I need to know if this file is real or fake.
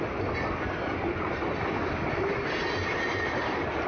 real